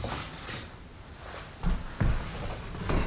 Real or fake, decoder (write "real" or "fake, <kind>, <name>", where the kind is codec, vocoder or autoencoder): real